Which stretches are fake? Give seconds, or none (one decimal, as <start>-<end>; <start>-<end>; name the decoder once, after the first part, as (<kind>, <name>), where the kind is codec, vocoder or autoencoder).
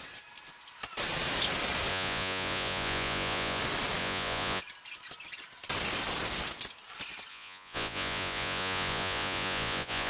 1.9-3.6 (vocoder, Vocos); 4.0-4.6; 7.3-10.1